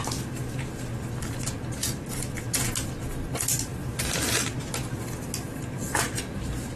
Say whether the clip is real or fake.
real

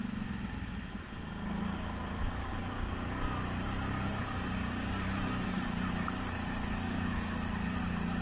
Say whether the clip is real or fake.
real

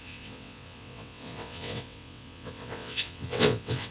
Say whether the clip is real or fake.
fake